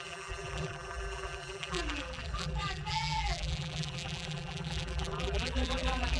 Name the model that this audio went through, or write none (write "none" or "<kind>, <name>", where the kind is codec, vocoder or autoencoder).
vocoder, BigVGAN v2